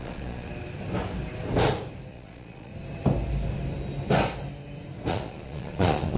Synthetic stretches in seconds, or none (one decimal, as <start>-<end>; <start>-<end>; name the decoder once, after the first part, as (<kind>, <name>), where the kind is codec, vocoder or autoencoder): 0.0-0.5 (vocoder, Vocos); 2.1-2.7; 5.1-6.2

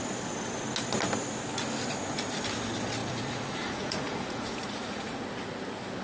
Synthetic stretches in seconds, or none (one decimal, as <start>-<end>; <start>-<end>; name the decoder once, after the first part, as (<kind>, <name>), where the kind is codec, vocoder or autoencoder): 3.0-5.2 (vocoder, Vocos)

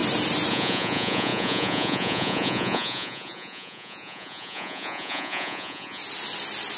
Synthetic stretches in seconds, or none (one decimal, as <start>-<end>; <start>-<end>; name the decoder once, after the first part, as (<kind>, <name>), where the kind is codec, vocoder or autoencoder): 0.5-6.0 (vocoder, Vocos)